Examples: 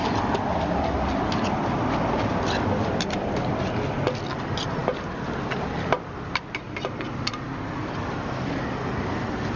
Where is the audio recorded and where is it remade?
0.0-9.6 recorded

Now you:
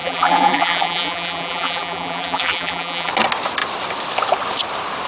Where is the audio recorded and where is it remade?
0.0-3.1 remade; 3.1-5.1 recorded

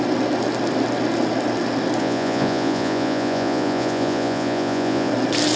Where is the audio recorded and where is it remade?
0.0-2.0 recorded; 2.0-5.1 remade; 5.1-5.6 recorded

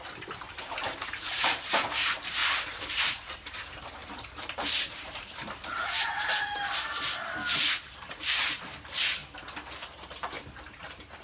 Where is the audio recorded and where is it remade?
0.0-2.4 remade; 2.4-3.0 recorded; 3.0-9.2 remade; 9.2-9.8 recorded; 9.8-11.2 remade

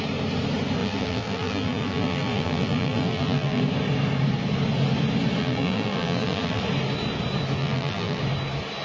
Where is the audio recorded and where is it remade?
0.0-0.8 recorded; 0.8-3.6 remade; 3.6-5.4 recorded; 5.4-6.6 remade; 6.6-7.6 recorded; 7.6-8.2 remade; 8.2-8.8 recorded

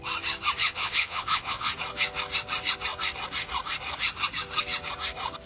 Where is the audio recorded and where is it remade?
0.0-0.6 recorded; 0.6-1.7 remade; 1.7-5.5 recorded

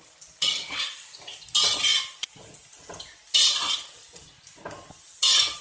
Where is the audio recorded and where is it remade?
0.0-5.6 remade

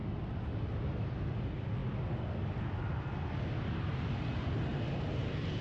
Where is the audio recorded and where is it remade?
0.0-5.6 recorded